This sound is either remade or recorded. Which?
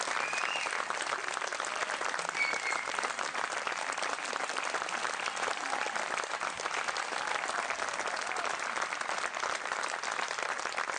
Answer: remade